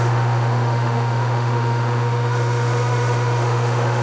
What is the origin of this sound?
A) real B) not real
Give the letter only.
B